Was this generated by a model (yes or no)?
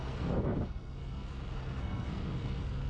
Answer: yes